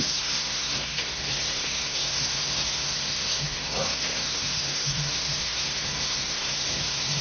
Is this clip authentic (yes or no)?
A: no